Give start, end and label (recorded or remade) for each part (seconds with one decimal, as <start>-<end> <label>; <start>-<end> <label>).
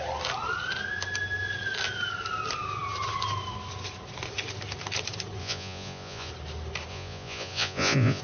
0.0-5.4 recorded; 5.4-6.3 remade; 6.3-6.9 recorded; 6.9-8.2 remade